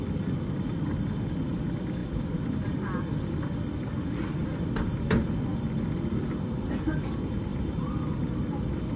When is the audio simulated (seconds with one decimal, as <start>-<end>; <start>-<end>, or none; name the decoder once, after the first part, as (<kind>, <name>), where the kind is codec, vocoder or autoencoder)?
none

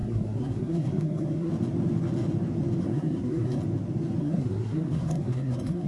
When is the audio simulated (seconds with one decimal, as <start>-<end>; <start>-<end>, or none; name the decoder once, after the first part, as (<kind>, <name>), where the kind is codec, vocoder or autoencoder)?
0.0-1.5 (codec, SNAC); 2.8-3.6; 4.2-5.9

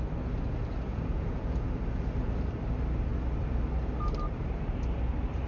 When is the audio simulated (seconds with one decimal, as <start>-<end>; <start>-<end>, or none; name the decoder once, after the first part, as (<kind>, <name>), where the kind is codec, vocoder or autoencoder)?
0.9-1.7 (vocoder, Vocos)

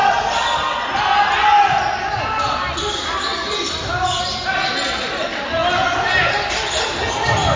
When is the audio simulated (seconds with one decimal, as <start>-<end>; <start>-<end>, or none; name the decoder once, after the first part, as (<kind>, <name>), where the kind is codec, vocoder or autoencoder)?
none